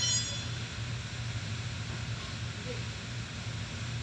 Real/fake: real